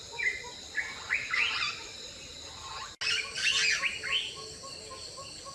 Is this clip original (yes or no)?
yes